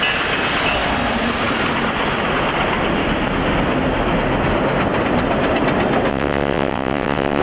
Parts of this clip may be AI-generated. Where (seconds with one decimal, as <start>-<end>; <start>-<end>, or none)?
6.1-7.4